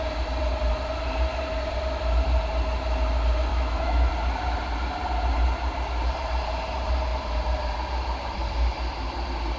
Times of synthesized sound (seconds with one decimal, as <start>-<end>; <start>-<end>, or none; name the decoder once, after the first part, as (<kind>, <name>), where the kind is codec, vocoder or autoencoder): 3.5-4.1 (autoencoder, DAC-VAE)